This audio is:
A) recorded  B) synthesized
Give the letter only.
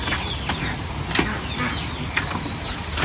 A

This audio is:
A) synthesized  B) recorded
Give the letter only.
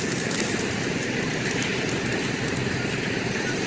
B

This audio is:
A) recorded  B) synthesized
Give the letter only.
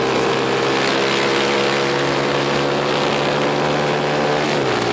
A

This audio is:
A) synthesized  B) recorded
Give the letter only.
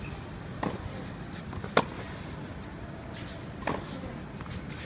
B